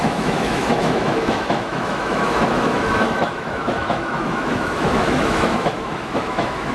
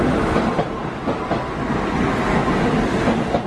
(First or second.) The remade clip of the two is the first